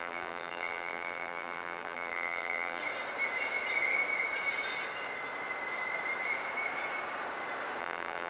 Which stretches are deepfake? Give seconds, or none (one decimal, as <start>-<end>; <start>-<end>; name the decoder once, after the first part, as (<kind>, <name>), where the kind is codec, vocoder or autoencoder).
0.0-2.8 (vocoder, BigVGAN v2); 7.8-8.3